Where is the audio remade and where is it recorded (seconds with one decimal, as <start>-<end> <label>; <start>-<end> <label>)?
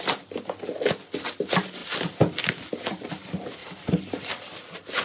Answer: 0.0-1.8 recorded; 1.8-3.1 remade; 3.1-3.6 recorded; 3.6-4.3 remade; 4.3-5.0 recorded